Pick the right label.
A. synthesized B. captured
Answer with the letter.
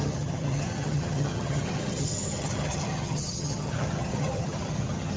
A